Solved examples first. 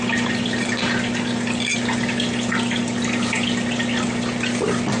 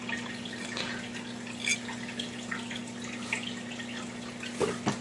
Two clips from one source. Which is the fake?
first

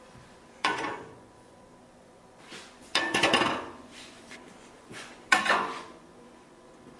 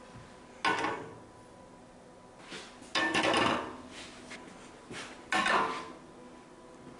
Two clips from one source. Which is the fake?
first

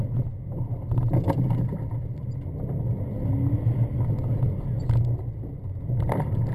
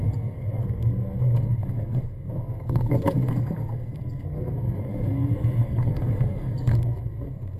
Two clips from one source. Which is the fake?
second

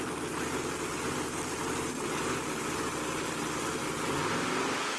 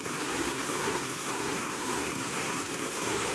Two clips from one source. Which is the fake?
second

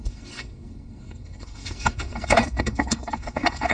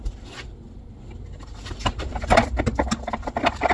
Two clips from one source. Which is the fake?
first